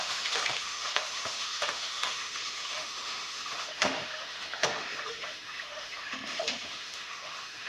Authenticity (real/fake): fake